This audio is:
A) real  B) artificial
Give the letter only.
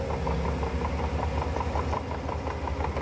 A